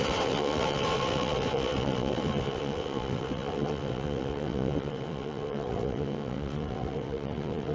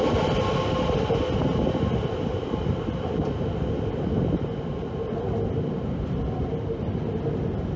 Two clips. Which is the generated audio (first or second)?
first